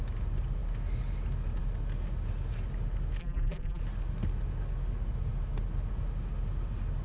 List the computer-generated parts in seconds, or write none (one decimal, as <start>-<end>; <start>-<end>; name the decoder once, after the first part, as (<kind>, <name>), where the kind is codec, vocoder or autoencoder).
3.2-3.8 (vocoder, BigVGAN v2)